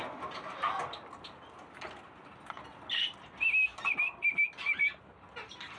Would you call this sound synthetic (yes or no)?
no